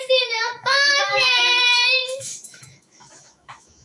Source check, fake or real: fake